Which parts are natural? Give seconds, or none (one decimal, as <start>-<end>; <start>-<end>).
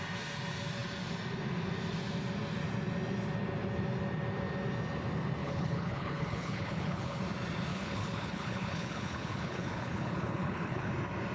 0.0-5.4; 7.2-7.7; 10.9-11.3